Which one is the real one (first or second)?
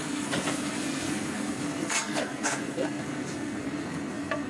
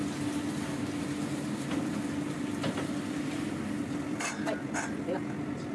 second